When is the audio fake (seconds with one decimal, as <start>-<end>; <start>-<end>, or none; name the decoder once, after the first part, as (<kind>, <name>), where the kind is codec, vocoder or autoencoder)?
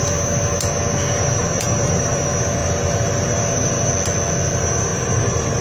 1.4-2.2 (vocoder, BigVGAN v2); 2.6-3.9; 4.9-5.6